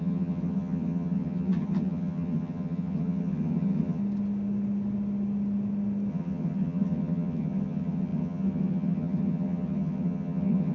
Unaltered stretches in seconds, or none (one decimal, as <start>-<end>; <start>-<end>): 4.0-6.1